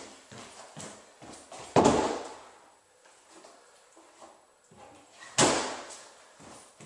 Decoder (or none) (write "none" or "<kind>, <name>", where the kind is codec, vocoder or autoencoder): none